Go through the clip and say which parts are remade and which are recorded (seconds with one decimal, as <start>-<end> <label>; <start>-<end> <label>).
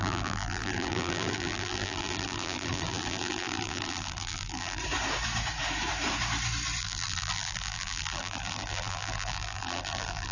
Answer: 0.0-4.8 remade; 4.8-6.8 recorded; 6.8-10.3 remade